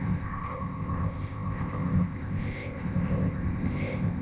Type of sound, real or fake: fake